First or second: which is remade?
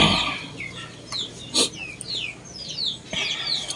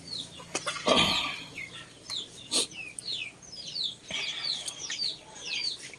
second